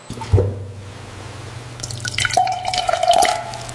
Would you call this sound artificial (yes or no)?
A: no